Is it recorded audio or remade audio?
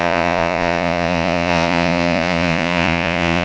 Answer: remade